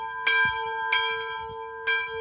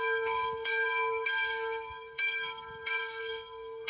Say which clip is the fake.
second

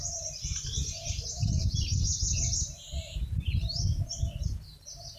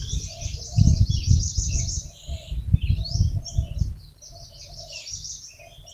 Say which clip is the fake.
first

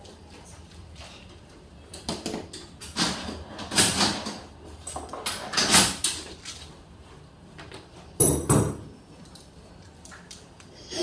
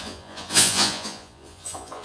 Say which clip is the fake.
second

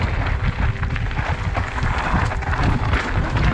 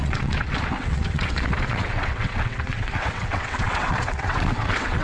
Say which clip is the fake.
second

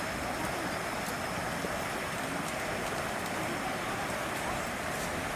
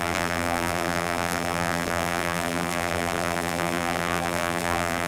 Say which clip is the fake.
second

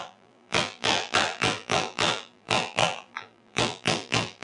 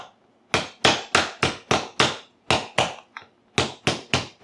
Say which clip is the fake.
first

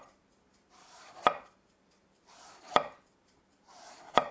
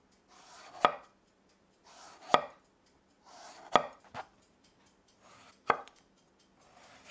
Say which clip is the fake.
first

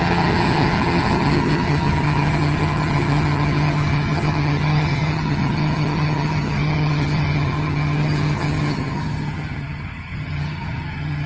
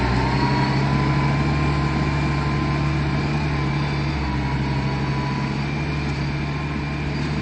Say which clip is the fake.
first